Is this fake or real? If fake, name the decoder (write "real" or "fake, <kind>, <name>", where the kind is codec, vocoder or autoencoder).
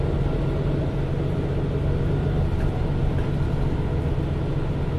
real